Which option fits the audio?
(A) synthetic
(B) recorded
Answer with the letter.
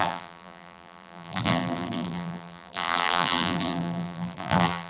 A